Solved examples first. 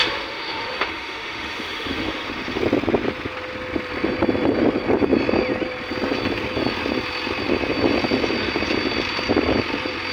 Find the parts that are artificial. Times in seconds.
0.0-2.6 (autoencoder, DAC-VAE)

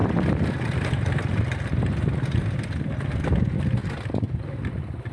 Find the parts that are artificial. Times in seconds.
0.0-3.0 (vocoder, BigVGAN v2); 3.8-4.4

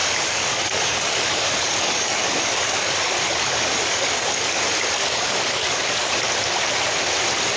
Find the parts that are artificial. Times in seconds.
0.0-4.6 (codec, DAC); 5.0-6.1

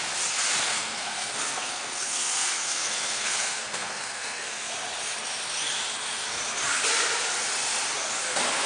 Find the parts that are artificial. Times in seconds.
0.7-4.7 (codec, SNAC)

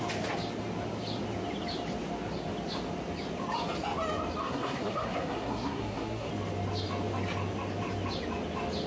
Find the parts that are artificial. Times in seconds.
4.4-6.3 (codec, SNAC)

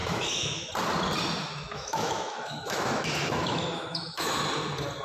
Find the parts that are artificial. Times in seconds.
0.0-0.7 (autoencoder, DAC-VAE); 1.4-4.4

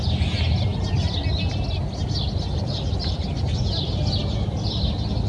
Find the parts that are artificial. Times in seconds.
none